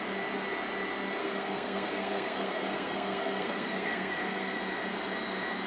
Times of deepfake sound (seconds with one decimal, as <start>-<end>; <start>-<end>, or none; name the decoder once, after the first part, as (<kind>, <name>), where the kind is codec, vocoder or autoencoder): 1.2-4.6 (codec, SNAC)